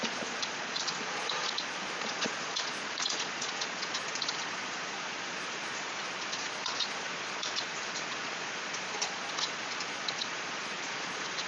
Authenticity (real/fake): fake